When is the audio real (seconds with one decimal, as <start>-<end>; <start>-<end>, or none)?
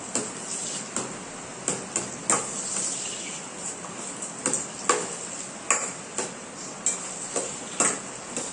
0.0-8.5